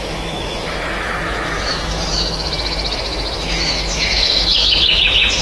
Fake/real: fake